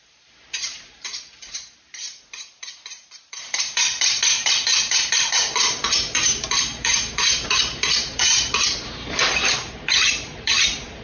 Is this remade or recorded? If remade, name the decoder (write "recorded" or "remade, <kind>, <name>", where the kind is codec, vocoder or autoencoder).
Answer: remade, vocoder, BigVGAN v2